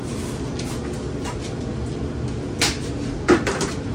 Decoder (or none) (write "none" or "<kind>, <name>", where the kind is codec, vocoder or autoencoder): none